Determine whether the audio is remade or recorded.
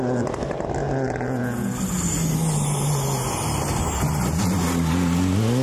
recorded